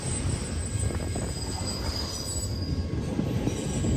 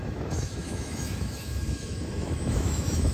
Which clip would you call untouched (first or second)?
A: first